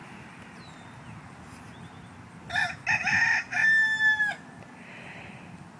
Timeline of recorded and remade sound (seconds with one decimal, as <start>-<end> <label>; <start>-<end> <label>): 0.0-1.3 remade; 1.3-5.8 recorded